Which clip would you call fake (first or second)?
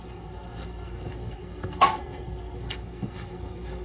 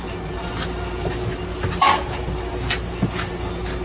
first